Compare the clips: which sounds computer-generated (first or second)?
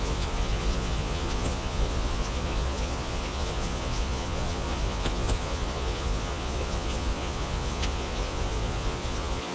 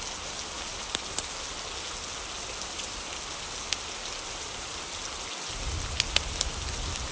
first